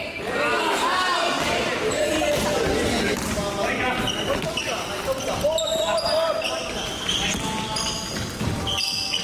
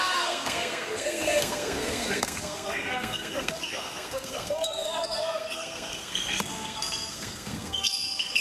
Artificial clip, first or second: second